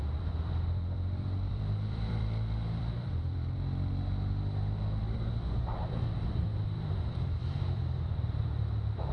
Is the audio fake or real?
fake